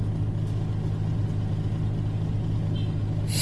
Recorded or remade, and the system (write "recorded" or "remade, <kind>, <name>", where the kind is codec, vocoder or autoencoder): recorded